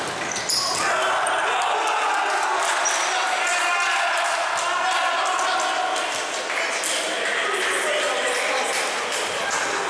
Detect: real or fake real